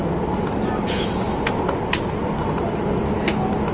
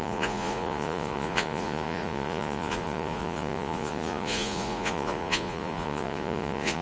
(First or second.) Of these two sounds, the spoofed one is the second